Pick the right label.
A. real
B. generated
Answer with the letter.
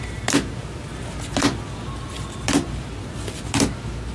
A